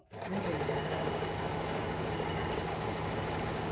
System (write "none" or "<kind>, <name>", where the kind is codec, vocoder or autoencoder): codec, DAC